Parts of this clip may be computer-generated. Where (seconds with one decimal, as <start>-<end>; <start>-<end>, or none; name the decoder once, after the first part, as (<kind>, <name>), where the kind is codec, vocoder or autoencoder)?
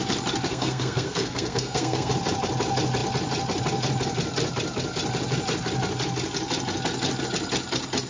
0.5-2.1 (codec, SNAC)